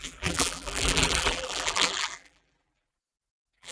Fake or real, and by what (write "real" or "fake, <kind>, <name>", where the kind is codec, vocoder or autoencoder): fake, vocoder, BigVGAN v2